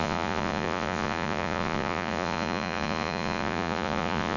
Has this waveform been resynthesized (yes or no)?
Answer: yes